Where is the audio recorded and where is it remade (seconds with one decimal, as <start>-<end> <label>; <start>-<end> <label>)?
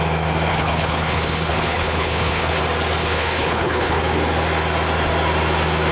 0.0-0.5 recorded; 0.5-2.6 remade; 2.6-3.0 recorded; 3.0-4.0 remade; 4.0-5.9 recorded